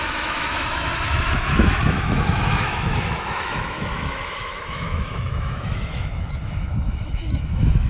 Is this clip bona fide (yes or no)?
no